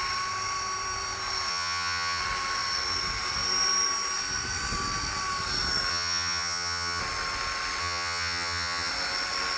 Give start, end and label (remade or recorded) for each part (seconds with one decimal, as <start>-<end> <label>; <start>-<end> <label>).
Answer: 0.0-1.5 recorded; 1.5-2.2 remade; 2.2-5.9 recorded; 5.9-7.0 remade; 7.0-7.8 recorded; 7.8-8.9 remade; 8.9-9.6 recorded